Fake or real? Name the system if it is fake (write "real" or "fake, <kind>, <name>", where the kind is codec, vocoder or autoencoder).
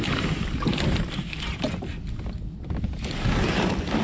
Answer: real